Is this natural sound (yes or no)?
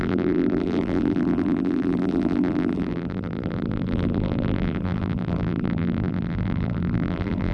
no